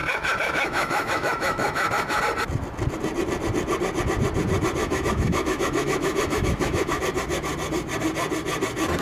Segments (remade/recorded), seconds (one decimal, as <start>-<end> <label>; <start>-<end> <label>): 0.0-2.2 remade; 2.2-4.8 recorded; 4.8-7.0 remade; 7.0-9.0 recorded